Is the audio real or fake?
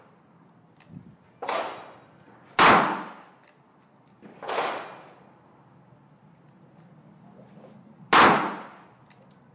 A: real